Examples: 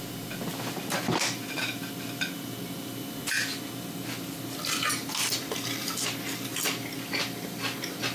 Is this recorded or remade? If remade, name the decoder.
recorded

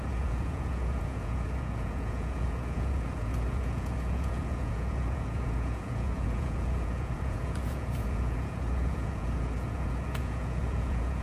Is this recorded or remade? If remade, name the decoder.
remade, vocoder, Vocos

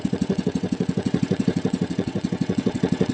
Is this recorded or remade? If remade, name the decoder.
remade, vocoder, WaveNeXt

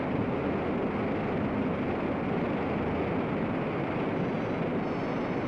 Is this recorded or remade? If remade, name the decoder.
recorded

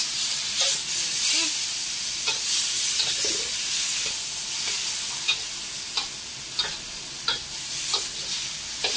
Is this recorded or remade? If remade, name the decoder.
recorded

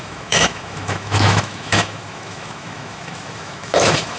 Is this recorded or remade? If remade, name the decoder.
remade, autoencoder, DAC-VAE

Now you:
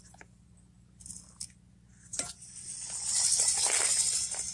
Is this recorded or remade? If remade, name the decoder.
recorded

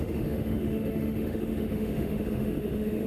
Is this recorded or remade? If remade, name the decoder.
remade, autoencoder, DAC-VAE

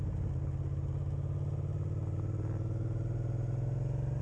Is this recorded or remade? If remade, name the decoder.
recorded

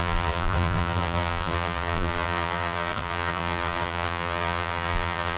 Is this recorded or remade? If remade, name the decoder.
remade, vocoder, BigVGAN v2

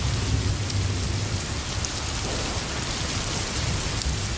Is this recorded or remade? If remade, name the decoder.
recorded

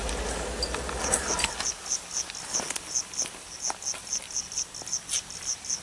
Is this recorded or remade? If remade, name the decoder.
recorded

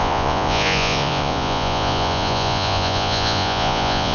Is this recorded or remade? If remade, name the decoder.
remade, vocoder, Vocos